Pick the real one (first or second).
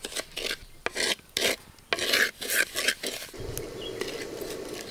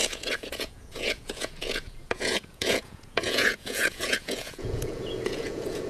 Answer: first